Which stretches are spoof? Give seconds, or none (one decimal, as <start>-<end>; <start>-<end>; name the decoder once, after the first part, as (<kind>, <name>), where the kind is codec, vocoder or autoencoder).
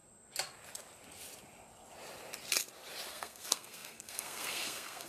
3.1-5.1 (codec, SNAC)